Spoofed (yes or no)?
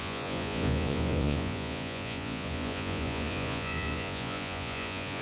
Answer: yes